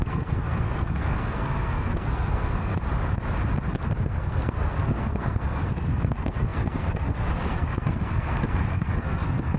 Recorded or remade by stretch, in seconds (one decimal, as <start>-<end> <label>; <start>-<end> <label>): 0.0-2.7 remade; 2.7-4.0 recorded; 4.0-9.6 remade